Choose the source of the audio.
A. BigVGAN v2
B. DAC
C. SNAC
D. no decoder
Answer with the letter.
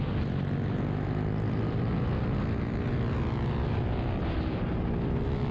D